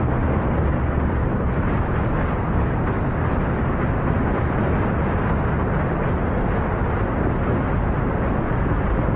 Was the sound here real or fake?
real